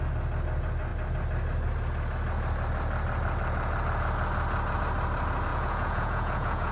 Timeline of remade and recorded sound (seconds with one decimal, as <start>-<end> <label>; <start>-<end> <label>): 0.0-5.5 recorded; 5.5-6.7 remade